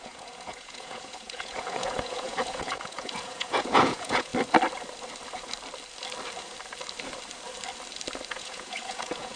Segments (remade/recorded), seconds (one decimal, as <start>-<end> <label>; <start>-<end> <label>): 0.0-4.3 remade; 4.3-8.3 recorded; 8.3-9.4 remade